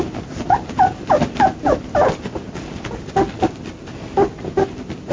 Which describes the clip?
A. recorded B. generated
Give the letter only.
A